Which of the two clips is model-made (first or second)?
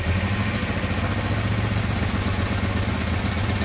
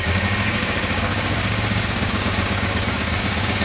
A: second